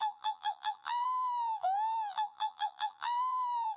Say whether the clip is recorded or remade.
remade